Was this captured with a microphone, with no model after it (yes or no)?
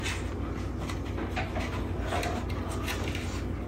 yes